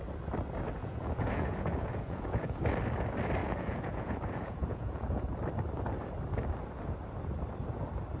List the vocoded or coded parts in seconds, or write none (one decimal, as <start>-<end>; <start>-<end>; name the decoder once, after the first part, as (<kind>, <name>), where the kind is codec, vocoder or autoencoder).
0.8-2.6 (vocoder, Vocos); 3.4-5.2